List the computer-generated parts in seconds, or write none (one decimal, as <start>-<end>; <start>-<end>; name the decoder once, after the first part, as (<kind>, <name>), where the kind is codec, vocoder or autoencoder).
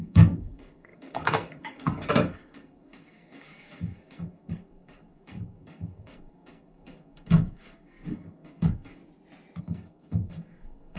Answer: 0.0-9.0 (codec, SNAC); 9.6-11.0